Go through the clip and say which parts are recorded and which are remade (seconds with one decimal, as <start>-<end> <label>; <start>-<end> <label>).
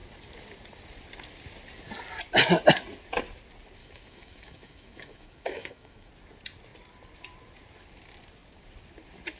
0.0-3.8 recorded; 3.8-6.1 remade; 6.1-9.4 recorded